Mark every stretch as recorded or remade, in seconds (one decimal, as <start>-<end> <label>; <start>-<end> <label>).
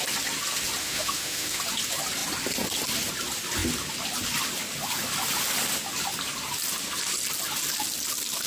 0.0-0.8 recorded; 0.8-1.6 remade; 1.6-8.5 recorded